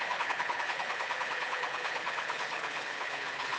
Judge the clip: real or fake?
fake